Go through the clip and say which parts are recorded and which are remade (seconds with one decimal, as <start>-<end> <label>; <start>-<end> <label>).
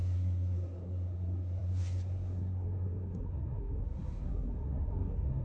0.0-5.4 remade